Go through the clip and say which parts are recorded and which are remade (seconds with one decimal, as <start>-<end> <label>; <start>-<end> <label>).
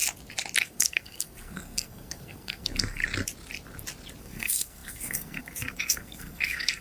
0.0-0.6 recorded; 0.6-3.0 remade; 3.0-4.2 recorded; 4.2-6.8 remade